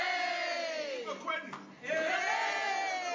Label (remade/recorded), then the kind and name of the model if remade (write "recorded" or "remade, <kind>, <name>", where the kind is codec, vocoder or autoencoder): recorded